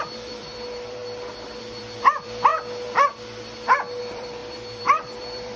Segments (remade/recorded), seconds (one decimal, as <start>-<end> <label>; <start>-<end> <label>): 0.0-1.0 remade; 1.0-1.6 recorded; 1.6-2.5 remade; 2.5-4.0 recorded; 4.0-5.6 remade